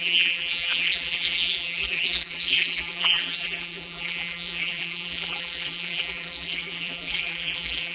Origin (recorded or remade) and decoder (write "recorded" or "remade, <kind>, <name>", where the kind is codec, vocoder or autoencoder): remade, vocoder, BigVGAN v2